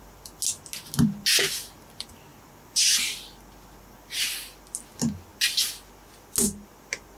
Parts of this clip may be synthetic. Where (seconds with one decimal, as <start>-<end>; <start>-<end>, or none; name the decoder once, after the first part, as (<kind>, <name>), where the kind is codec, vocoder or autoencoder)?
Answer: none

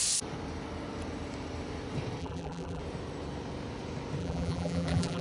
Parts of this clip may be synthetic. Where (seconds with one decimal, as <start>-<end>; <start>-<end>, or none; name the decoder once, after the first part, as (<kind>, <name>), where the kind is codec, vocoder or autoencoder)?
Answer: 2.2-2.8 (vocoder, BigVGAN v2); 4.2-5.2